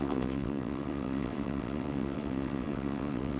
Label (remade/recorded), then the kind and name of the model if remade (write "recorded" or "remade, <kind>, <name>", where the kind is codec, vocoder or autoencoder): remade, vocoder, WaveNeXt